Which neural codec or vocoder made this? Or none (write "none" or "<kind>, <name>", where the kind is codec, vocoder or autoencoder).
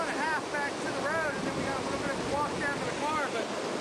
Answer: none